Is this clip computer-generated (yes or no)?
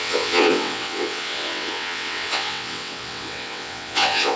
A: yes